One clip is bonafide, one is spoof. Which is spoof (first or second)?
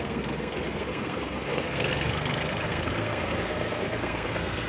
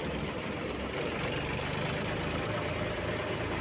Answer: first